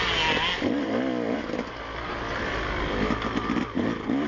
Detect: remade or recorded recorded